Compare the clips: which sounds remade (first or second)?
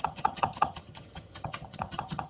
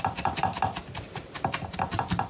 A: first